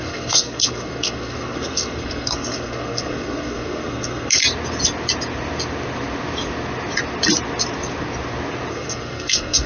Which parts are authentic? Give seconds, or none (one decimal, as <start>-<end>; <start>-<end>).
4.4-8.7